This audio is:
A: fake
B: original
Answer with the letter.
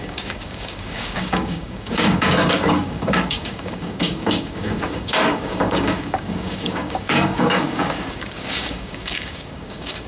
A